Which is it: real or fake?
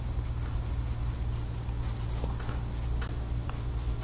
real